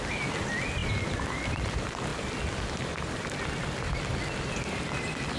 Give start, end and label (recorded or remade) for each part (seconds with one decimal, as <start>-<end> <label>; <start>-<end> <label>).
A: 0.0-0.8 recorded; 0.8-1.7 remade; 1.7-2.1 recorded; 2.1-4.2 remade; 4.2-5.4 recorded